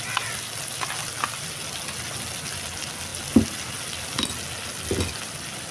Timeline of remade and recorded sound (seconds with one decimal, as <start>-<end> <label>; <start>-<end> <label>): 0.0-5.7 recorded

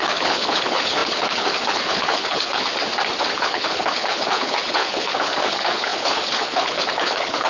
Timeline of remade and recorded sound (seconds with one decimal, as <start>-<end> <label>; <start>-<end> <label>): 0.0-2.7 remade; 2.7-3.3 recorded; 3.3-7.5 remade

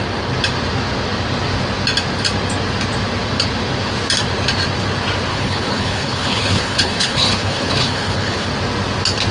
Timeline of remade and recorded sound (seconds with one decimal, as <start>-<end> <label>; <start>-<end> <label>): 0.0-5.3 recorded; 5.3-8.5 remade; 8.5-9.3 recorded

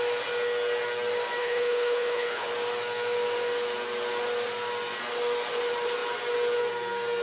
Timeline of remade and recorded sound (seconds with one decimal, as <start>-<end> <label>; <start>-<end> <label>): 0.0-1.4 recorded; 1.4-2.5 remade; 2.5-7.2 recorded

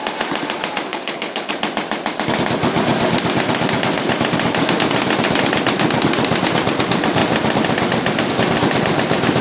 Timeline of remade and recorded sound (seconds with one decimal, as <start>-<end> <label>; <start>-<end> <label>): 0.0-0.9 recorded; 0.9-1.5 remade; 1.5-9.4 recorded